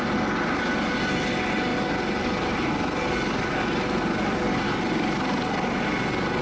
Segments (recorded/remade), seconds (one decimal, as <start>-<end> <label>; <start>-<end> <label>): 0.0-6.4 recorded